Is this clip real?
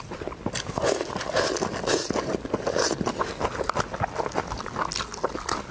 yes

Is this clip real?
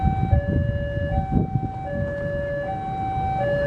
yes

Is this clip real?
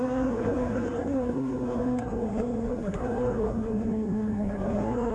no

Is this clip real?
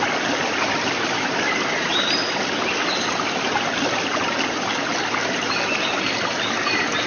yes